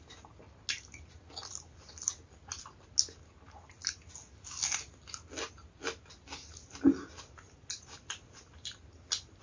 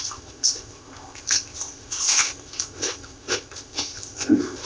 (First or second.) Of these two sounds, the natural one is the first